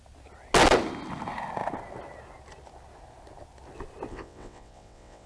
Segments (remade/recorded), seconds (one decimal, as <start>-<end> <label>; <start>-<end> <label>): 0.0-4.1 recorded; 4.1-5.3 remade